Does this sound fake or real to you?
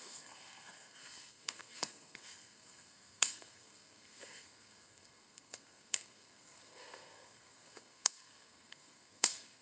fake